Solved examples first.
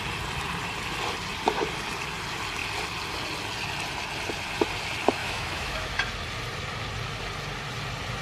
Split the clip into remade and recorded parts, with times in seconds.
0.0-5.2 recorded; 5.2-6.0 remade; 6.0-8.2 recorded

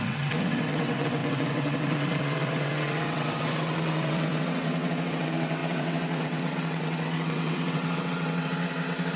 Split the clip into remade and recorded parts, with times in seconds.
0.0-9.2 remade

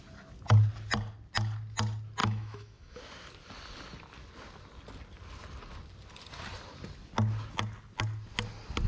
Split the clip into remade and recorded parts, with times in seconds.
0.0-2.2 recorded; 2.2-3.0 remade; 3.0-8.9 recorded

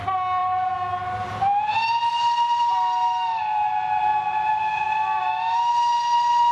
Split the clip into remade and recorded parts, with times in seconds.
0.0-6.5 recorded

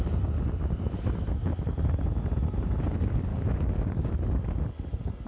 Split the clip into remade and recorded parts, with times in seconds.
0.0-3.3 recorded; 3.3-4.1 remade; 4.1-5.3 recorded

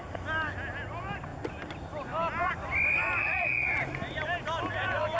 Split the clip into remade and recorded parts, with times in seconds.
0.0-3.2 recorded; 3.2-3.8 remade; 3.8-5.2 recorded

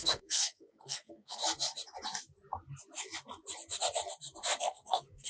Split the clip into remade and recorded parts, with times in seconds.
0.0-1.4 remade; 1.4-4.6 recorded; 4.6-5.3 remade